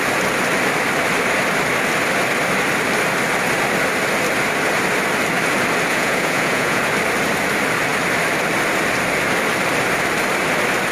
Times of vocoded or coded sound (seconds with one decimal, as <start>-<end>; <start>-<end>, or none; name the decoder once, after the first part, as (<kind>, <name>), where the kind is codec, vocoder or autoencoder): 5.9-6.8 (vocoder, Vocos)